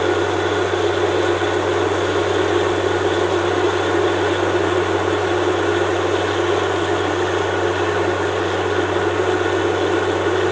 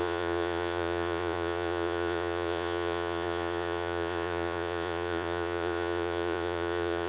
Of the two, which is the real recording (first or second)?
first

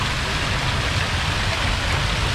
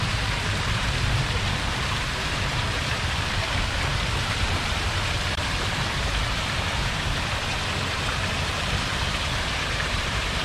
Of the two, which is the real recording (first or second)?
first